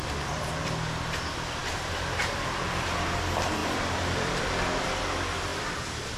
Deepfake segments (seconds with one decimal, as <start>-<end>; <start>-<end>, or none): 1.6-2.3; 3.6-4.4; 5.5-6.2